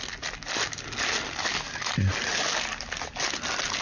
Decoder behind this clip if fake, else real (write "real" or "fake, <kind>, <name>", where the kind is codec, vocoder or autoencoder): real